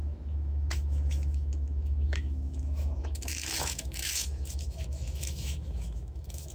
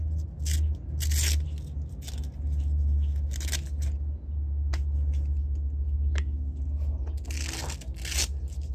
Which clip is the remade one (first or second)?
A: first